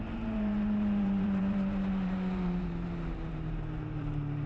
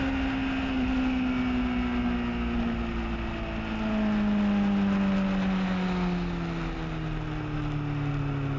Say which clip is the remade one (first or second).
first